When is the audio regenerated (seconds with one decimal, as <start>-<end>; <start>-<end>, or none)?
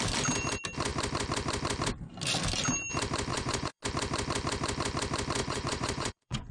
3.3-3.8; 5.4-6.5